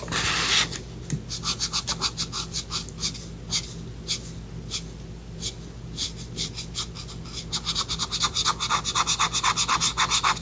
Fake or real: real